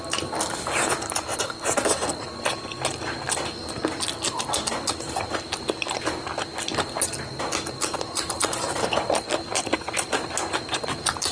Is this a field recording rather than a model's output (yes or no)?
yes